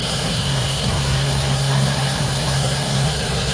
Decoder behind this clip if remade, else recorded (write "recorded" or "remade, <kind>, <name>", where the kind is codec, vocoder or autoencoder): remade, codec, SNAC